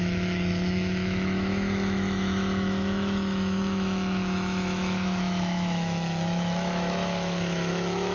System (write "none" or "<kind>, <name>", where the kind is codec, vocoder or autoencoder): autoencoder, DAC-VAE